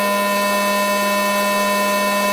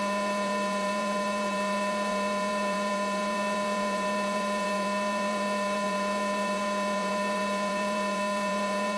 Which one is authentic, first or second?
first